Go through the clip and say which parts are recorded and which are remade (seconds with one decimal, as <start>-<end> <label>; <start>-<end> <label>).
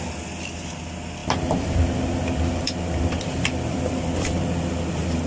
0.0-1.2 recorded; 1.2-4.4 remade; 4.4-5.3 recorded